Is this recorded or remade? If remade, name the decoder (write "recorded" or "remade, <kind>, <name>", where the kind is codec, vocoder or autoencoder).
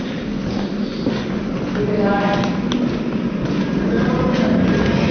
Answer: recorded